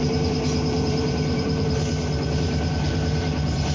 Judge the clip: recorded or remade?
remade